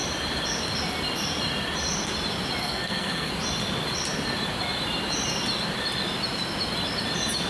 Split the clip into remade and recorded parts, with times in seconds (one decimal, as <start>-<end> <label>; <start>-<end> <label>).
0.0-2.6 recorded; 2.6-3.3 remade; 3.3-7.5 recorded